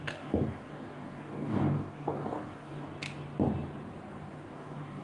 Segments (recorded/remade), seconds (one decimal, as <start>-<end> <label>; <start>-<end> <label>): 0.0-2.9 remade; 2.9-4.5 recorded; 4.5-5.0 remade